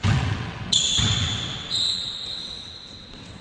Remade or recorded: remade